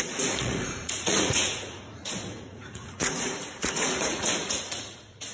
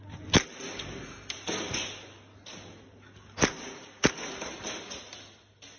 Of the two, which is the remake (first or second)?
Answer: first